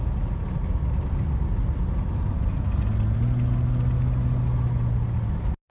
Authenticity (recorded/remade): recorded